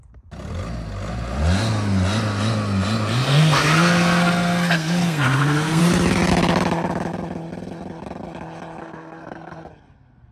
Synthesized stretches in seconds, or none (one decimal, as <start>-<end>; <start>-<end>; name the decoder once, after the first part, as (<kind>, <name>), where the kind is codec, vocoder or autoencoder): 3.3-5.8 (codec, SNAC); 8.8-9.7